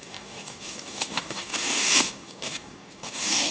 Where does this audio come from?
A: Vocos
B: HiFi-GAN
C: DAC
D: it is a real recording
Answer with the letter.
C